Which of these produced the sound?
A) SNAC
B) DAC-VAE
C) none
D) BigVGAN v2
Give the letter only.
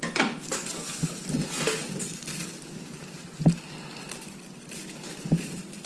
C